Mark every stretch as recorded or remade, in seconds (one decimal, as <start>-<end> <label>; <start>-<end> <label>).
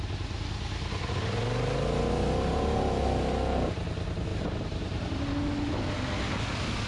0.0-4.3 recorded; 4.3-5.2 remade; 5.2-6.9 recorded